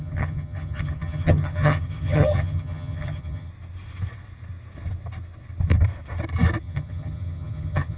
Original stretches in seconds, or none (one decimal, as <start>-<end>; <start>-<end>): 3.5-6.6